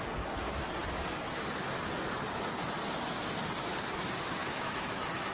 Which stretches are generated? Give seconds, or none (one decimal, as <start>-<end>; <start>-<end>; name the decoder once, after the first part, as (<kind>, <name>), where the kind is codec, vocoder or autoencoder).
4.4-5.3 (autoencoder, DAC-VAE)